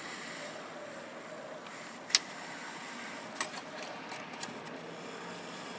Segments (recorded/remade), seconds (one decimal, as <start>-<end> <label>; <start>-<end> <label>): 0.0-5.8 recorded